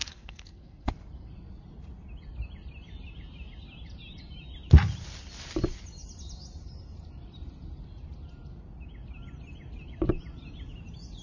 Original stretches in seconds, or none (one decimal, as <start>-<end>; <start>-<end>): 0.9-11.2